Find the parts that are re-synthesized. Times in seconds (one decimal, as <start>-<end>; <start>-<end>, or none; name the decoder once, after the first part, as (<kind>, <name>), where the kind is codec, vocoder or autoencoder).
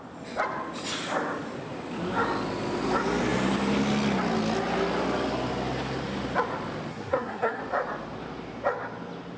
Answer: 6.9-7.6 (codec, SNAC)